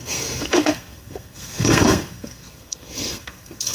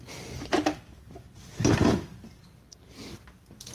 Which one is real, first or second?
second